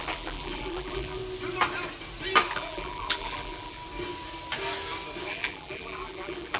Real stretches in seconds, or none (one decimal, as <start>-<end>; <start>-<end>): 1.2-2.5; 3.8-5.2